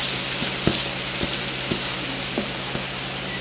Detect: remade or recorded recorded